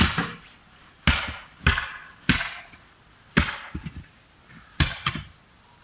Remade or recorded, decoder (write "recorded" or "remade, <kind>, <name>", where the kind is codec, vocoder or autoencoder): recorded